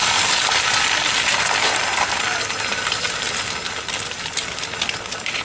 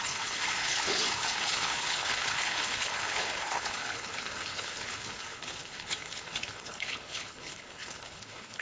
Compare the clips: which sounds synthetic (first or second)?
second